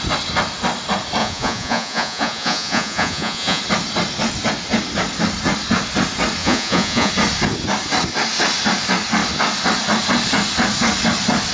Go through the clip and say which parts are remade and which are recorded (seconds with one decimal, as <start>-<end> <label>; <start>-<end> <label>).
0.0-1.2 recorded; 1.2-3.6 remade; 3.6-6.4 recorded; 6.4-7.1 remade; 7.1-11.5 recorded